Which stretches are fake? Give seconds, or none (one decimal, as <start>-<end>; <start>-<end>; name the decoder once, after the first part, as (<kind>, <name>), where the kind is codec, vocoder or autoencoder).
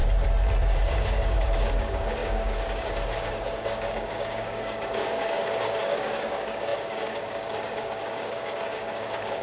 0.6-9.4 (codec, DAC)